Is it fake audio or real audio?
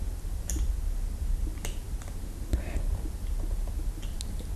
real